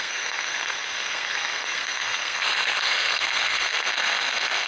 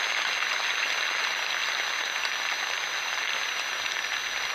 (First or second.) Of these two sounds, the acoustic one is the second